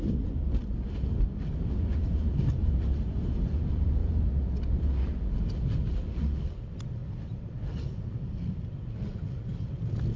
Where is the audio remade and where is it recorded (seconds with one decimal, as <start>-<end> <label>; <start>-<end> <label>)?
0.0-2.6 recorded; 2.6-3.4 remade; 3.4-10.2 recorded